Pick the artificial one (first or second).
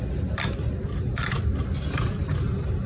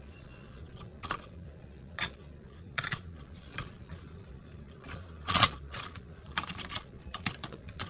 second